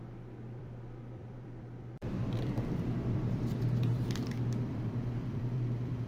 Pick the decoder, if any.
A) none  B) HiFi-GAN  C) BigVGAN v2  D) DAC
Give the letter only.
C